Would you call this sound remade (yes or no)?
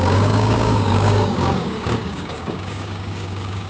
yes